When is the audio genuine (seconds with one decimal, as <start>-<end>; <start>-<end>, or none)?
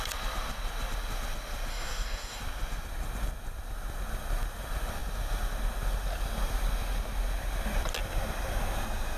0.0-1.7; 2.4-9.2